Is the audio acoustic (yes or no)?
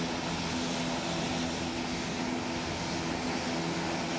yes